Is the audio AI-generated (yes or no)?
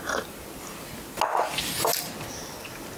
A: no